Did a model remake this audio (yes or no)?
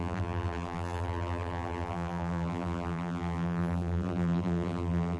yes